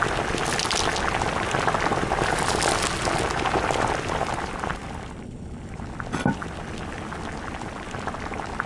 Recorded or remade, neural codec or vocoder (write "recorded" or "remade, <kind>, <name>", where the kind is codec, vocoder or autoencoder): recorded